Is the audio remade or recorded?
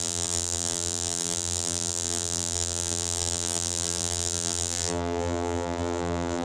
remade